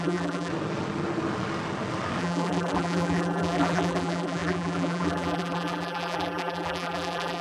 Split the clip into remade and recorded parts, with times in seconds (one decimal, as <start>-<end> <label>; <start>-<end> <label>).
0.0-0.5 remade; 0.5-2.2 recorded; 2.2-7.4 remade